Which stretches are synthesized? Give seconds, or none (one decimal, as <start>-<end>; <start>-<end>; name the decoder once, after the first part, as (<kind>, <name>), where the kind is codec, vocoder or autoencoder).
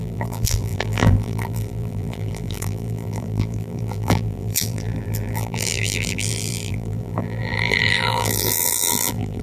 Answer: 0.0-9.4 (vocoder, BigVGAN v2)